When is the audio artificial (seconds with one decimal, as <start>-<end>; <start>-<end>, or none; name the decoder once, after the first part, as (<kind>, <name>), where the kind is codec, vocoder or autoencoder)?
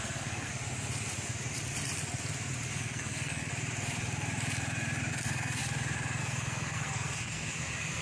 0.0-0.5 (codec, SNAC); 2.7-3.5; 5.1-5.6; 6.2-8.0